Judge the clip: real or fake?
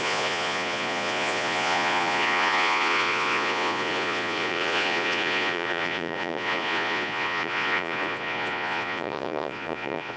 fake